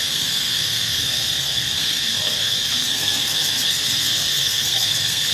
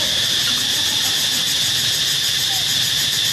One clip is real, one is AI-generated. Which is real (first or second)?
second